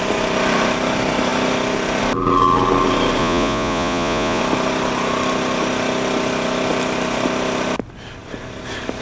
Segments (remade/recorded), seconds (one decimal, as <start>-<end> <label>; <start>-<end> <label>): 0.0-3.2 recorded; 3.2-4.4 remade; 4.4-9.0 recorded